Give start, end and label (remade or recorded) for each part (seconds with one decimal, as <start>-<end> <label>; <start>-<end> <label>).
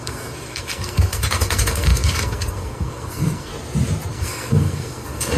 0.0-3.5 remade; 3.5-4.1 recorded; 4.1-5.4 remade